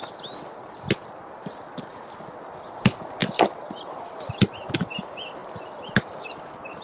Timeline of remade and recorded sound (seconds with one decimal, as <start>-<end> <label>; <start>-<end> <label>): 0.0-6.8 recorded